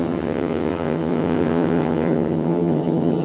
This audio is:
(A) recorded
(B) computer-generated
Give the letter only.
B